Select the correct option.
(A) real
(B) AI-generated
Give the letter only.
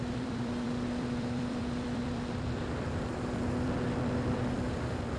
B